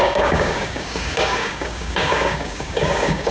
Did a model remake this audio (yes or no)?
yes